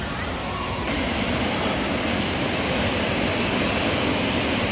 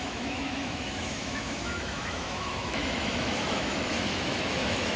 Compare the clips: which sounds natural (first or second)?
first